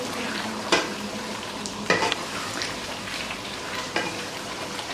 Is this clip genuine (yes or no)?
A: no